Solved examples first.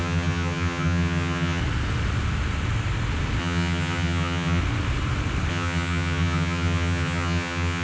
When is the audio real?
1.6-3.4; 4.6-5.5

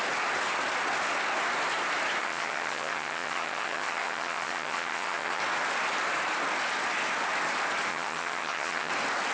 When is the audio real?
0.0-2.2; 5.4-7.9; 8.9-9.3

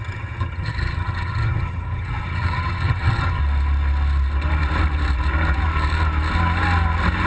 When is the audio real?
3.4-7.3

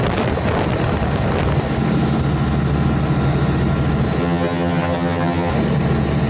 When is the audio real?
0.0-4.2; 5.5-6.3

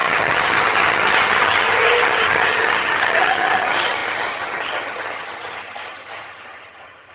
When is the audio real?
none

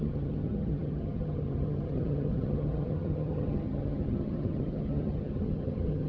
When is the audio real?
none

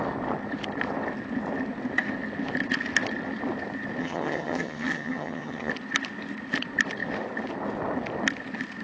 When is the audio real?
0.0-4.0; 5.7-8.8

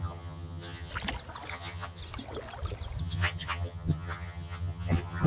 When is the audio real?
0.9-1.5; 2.0-3.0